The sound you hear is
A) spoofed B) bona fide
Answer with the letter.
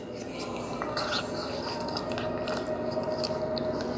B